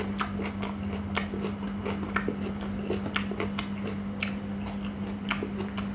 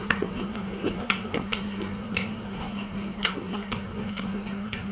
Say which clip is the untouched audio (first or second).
first